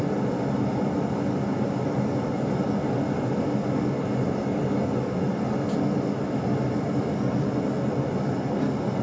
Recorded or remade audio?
recorded